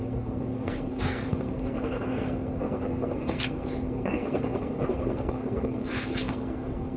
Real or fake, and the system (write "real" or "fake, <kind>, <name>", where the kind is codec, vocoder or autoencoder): fake, codec, SNAC